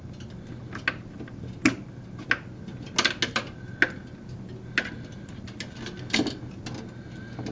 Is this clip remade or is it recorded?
recorded